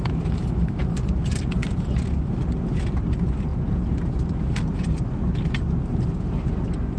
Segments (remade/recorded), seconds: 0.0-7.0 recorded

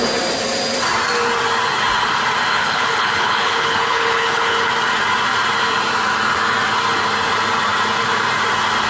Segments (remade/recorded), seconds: 0.0-2.5 recorded; 2.5-4.7 remade; 4.7-8.9 recorded

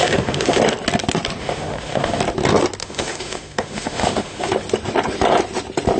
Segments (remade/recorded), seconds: 0.0-0.6 remade; 0.6-1.4 recorded; 1.4-2.2 remade; 2.2-2.8 recorded; 2.8-4.5 remade; 4.5-6.0 recorded

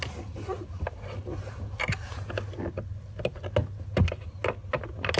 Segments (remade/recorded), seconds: 0.0-5.2 recorded

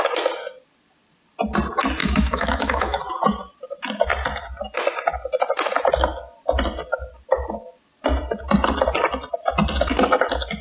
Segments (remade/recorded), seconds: 0.0-2.0 recorded; 2.0-3.0 remade; 3.0-10.6 recorded

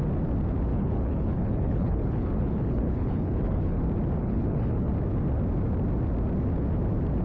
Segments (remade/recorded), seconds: 0.0-0.7 recorded; 0.7-3.8 remade; 3.8-4.2 recorded; 4.2-4.9 remade; 4.9-7.2 recorded

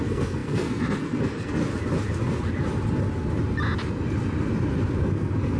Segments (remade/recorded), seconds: 0.0-1.6 remade; 1.6-5.0 recorded; 5.0-5.6 remade